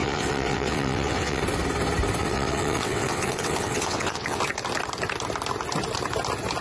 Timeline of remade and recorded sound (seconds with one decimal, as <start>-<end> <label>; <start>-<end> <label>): 0.0-1.4 remade; 1.4-2.2 recorded; 2.2-4.4 remade; 4.4-6.6 recorded